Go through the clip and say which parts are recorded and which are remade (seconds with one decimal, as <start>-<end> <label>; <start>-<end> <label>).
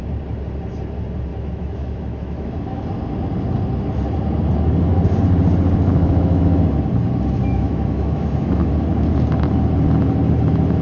0.0-1.3 recorded; 1.3-2.8 remade; 2.8-5.9 recorded; 5.9-6.7 remade; 6.7-7.5 recorded; 7.5-8.7 remade; 8.7-10.8 recorded